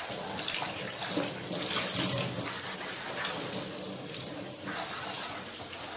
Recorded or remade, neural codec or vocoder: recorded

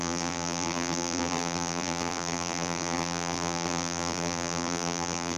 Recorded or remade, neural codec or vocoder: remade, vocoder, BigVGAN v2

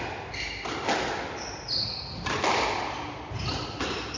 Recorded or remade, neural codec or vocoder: recorded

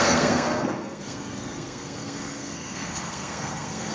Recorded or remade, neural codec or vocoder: remade, codec, SNAC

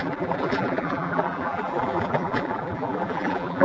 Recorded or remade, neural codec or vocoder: remade, vocoder, BigVGAN v2